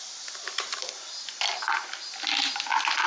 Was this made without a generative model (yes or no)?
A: yes